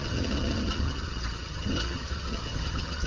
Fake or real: fake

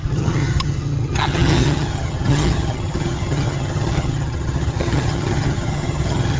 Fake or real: fake